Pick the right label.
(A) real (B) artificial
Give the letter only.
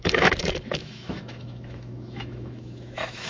B